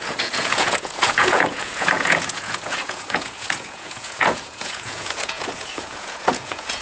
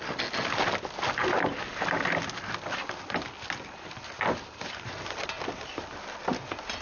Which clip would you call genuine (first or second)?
second